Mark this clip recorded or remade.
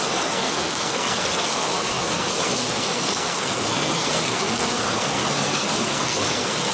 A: remade